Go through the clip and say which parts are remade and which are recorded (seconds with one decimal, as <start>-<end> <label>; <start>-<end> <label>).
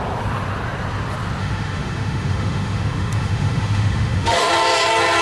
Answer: 0.0-1.4 recorded; 1.4-4.5 remade; 4.5-5.2 recorded